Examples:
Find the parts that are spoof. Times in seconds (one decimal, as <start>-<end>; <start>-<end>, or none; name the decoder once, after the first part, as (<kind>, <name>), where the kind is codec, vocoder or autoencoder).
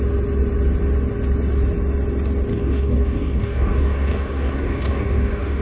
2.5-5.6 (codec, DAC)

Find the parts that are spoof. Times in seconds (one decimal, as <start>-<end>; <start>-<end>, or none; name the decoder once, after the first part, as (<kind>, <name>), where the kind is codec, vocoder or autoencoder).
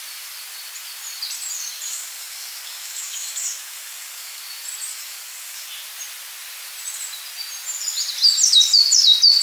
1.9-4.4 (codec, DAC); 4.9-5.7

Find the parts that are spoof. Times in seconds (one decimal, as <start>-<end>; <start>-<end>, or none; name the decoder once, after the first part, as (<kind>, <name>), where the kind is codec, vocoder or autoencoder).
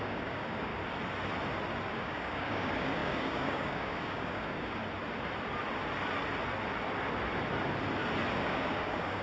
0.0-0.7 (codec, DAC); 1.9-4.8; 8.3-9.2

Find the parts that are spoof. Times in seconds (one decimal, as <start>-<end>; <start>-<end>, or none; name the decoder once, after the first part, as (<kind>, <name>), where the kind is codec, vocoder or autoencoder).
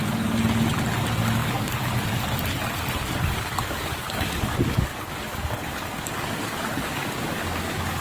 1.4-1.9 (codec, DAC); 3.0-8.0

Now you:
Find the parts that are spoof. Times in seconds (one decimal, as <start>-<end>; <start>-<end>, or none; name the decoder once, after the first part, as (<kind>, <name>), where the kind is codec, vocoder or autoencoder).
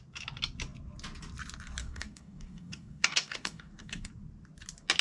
1.8-4.1 (codec, DAC)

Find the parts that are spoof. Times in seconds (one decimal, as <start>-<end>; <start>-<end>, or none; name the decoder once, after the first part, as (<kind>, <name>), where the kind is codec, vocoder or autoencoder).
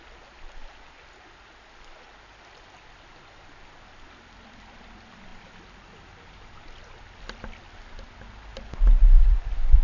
none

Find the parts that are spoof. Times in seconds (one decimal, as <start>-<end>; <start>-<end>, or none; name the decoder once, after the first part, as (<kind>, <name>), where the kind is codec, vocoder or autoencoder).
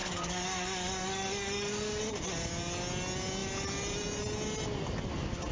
0.0-2.0 (codec, DAC)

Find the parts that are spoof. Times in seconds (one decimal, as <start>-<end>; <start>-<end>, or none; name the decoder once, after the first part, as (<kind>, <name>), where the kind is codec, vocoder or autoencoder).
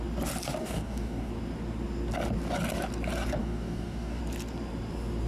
0.6-1.3 (codec, DAC); 3.4-4.2